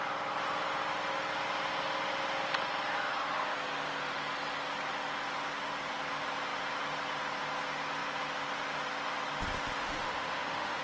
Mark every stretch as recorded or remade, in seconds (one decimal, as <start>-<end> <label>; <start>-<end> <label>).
0.0-9.8 recorded; 9.8-10.8 remade